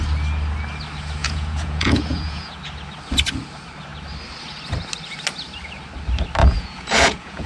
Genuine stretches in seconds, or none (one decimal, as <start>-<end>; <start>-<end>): 0.0-1.2; 2.6-6.4